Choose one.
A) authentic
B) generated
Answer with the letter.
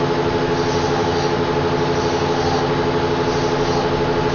A